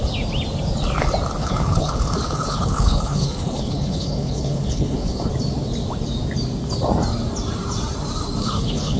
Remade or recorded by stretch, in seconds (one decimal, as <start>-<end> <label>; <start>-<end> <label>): 0.0-1.4 recorded; 1.4-5.3 remade; 5.3-8.4 recorded; 8.4-9.0 remade